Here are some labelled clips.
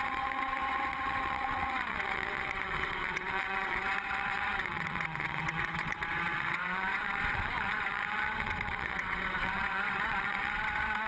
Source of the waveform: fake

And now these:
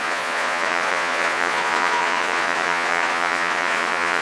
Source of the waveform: fake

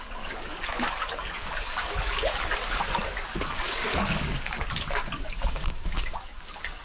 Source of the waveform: fake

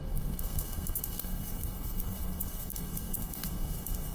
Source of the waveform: fake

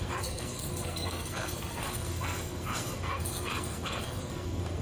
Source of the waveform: fake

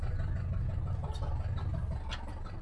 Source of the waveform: real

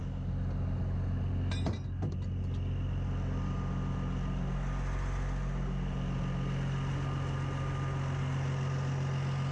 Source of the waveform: real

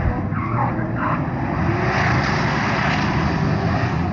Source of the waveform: real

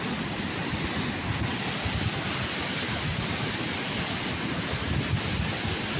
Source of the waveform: real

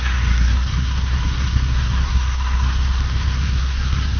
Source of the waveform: fake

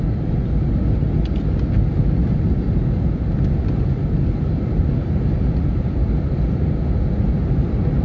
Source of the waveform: real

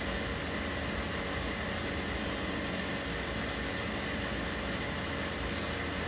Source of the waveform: real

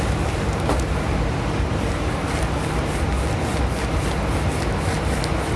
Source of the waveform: real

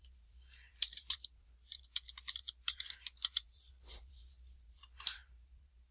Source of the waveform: fake